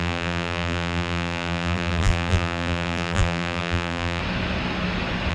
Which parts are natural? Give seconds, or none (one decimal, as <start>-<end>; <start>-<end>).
4.2-5.3